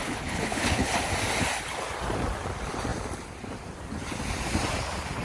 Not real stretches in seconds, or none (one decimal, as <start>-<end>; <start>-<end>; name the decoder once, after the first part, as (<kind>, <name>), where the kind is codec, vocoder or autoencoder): 0.0-0.9 (codec, HILCodec)